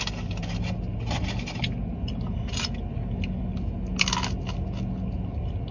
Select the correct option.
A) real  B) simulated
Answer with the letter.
A